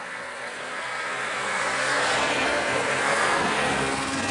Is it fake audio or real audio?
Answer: fake